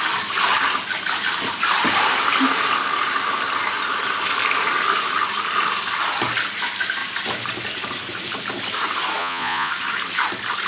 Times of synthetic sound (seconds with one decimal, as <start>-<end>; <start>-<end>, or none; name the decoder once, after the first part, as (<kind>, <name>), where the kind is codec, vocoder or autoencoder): 9.2-9.7 (vocoder, Vocos)